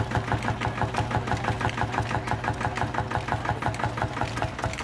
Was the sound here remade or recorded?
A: recorded